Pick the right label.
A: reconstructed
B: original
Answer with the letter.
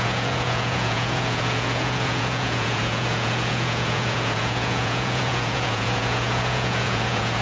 A